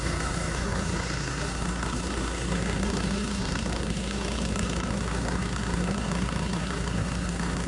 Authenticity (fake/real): fake